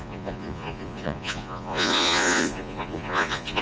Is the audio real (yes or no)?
no